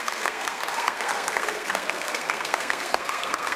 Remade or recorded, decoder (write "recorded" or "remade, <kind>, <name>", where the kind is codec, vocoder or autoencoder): remade, codec, SNAC